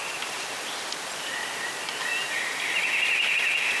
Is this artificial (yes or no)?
no